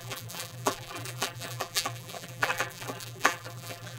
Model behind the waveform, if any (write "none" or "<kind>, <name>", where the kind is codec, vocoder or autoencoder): vocoder, BigVGAN v2